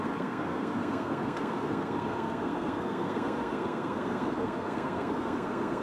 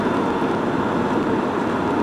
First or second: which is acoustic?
second